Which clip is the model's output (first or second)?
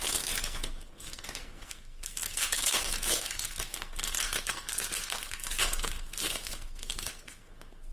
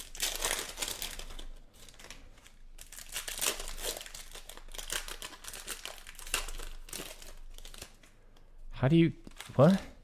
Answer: first